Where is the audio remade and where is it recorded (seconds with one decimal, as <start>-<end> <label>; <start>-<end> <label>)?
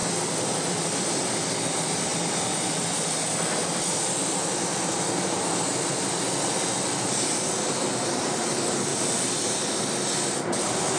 0.0-8.9 recorded; 8.9-9.6 remade; 9.6-11.0 recorded